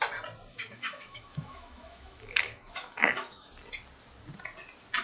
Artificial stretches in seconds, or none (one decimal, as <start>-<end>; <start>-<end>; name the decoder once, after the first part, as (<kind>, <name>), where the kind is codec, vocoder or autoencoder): 0.5-3.5 (autoencoder, DAC-VAE)